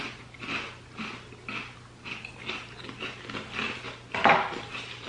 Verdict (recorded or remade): recorded